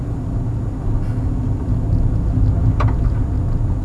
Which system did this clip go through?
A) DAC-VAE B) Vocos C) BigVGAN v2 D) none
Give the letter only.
D